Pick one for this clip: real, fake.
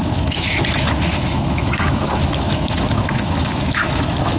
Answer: fake